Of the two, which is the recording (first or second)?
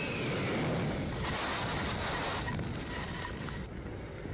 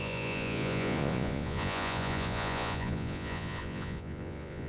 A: first